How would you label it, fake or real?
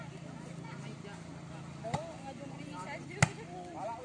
real